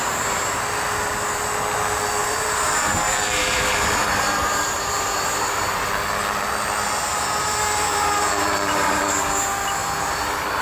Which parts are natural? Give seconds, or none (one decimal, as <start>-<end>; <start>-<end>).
0.0-2.2; 5.9-7.1; 9.0-9.8